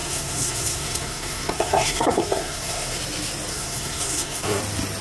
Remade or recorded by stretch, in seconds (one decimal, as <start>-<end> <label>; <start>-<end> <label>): 0.0-3.0 remade; 3.0-3.5 recorded; 3.5-4.6 remade; 4.6-5.0 recorded